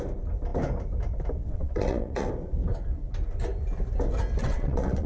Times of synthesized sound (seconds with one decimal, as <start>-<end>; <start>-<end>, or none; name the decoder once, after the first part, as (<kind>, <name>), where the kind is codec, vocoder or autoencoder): 1.4-2.3 (vocoder, WaveNeXt); 4.4-5.1